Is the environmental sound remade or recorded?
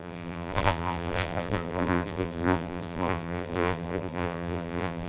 remade